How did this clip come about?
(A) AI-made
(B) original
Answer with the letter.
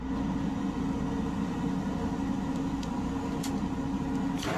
B